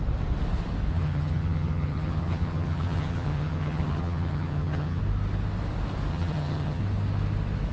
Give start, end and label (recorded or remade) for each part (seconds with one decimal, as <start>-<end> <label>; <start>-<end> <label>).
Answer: 0.0-0.9 recorded; 0.9-5.0 remade; 5.0-6.1 recorded; 6.1-6.8 remade; 6.8-7.7 recorded